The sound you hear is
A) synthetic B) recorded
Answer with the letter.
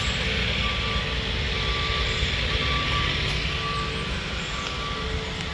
B